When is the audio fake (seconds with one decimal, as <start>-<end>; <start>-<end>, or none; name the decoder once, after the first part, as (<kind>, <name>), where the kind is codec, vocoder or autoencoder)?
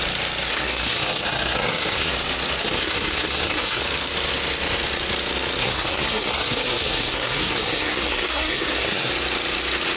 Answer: 0.5-2.1 (codec, SNAC); 2.6-3.8; 5.6-9.1